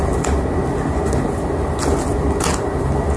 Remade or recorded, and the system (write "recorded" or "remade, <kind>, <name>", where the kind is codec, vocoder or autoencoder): recorded